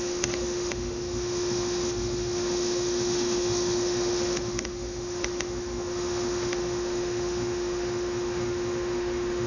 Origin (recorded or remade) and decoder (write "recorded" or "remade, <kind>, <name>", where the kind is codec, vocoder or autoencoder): remade, autoencoder, DAC-VAE